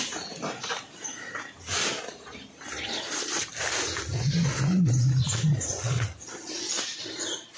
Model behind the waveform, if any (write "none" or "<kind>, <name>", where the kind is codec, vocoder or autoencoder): none